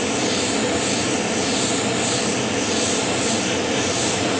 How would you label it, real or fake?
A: real